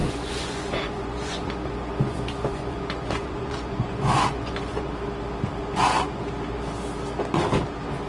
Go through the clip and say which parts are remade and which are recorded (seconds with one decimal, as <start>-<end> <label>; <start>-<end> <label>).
0.0-4.9 remade; 4.9-5.6 recorded; 5.6-6.2 remade; 6.2-8.1 recorded